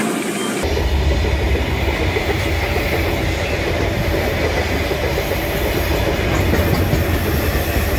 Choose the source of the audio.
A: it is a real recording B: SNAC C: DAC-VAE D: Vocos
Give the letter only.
A